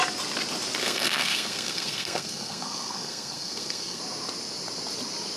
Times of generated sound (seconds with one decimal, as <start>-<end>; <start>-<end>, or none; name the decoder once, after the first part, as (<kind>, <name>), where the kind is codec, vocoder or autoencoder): 0.8-4.0 (codec, SNAC)